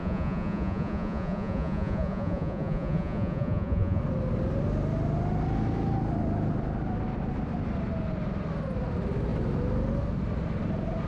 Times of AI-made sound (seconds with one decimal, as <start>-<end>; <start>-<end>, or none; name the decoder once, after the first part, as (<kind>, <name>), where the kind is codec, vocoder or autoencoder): 0.0-4.0 (vocoder, Vocos)